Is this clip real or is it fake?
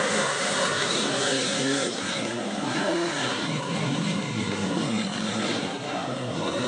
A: fake